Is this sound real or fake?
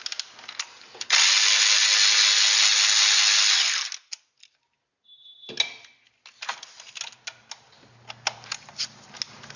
real